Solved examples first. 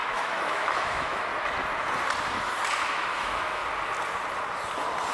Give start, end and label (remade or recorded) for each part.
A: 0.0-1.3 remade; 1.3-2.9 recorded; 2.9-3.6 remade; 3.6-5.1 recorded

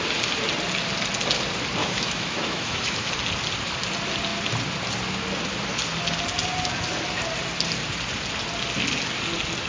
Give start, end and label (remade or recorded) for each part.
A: 0.0-1.8 recorded; 1.8-3.1 remade; 3.1-9.7 recorded

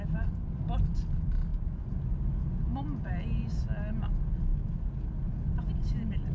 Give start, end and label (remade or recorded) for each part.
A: 0.0-6.3 recorded

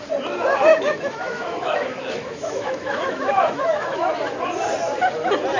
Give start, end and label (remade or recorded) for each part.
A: 0.0-0.7 recorded; 0.7-4.1 remade; 4.1-5.6 recorded

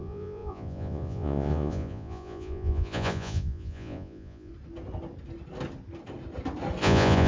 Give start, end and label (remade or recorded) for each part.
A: 0.0-4.5 remade; 4.5-6.8 recorded; 6.8-7.3 remade

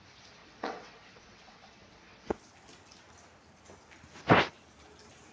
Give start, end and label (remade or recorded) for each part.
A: 0.0-0.4 recorded; 0.4-2.4 remade; 2.4-5.3 recorded

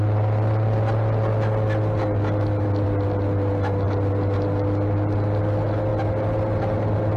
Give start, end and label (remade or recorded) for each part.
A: 0.0-7.2 recorded